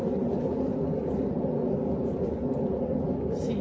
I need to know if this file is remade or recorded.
recorded